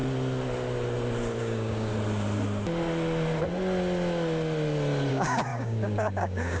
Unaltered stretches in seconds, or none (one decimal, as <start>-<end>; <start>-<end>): 0.0-1.4; 1.9-5.1